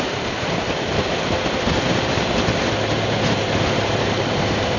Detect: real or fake fake